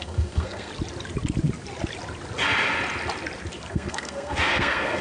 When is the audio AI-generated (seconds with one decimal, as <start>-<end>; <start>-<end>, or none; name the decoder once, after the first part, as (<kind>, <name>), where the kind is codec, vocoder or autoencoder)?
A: 0.0-0.7 (codec, SNAC); 3.7-5.0

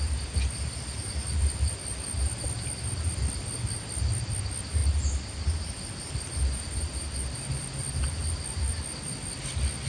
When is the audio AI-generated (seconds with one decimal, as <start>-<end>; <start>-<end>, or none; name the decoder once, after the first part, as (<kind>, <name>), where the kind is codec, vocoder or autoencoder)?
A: none

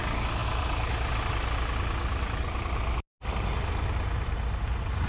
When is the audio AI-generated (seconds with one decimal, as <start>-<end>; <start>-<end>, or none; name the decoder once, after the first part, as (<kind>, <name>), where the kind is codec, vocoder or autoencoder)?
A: none

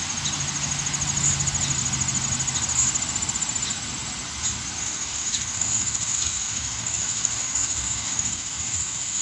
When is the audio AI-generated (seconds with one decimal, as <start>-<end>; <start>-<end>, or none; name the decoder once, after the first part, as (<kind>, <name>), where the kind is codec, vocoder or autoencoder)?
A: 4.8-9.2 (codec, DAC)

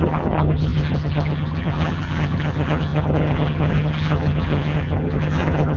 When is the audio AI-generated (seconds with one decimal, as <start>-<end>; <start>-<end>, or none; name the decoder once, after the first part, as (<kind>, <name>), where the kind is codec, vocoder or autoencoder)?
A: 0.0-5.8 (vocoder, HiFi-GAN)

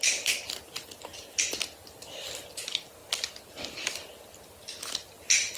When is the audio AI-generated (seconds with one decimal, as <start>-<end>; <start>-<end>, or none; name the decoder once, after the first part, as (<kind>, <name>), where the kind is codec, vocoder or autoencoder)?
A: none

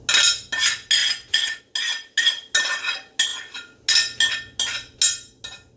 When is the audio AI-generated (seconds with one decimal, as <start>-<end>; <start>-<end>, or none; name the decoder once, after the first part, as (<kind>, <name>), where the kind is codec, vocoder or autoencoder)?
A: 1.0-1.6 (vocoder, Vocos)